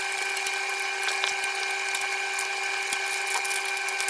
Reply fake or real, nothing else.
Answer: real